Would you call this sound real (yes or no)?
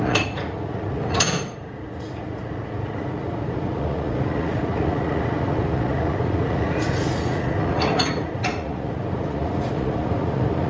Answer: no